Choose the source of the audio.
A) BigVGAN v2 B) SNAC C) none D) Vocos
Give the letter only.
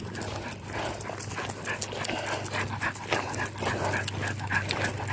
C